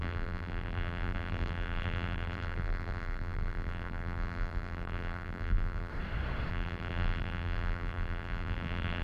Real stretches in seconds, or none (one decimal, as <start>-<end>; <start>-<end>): 5.9-6.5